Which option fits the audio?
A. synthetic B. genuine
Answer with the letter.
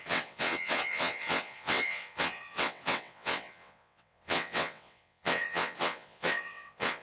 A